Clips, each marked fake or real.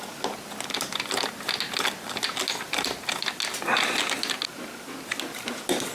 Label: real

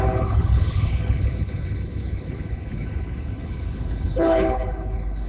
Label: fake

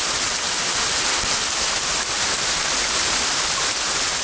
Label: real